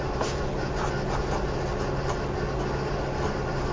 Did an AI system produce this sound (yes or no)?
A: no